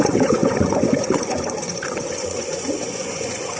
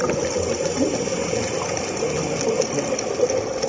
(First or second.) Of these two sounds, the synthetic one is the first